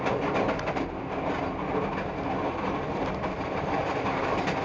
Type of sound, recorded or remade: recorded